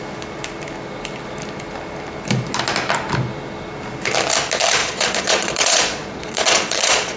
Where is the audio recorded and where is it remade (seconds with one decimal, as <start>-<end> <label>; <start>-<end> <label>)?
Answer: 0.0-4.8 recorded; 4.8-7.2 remade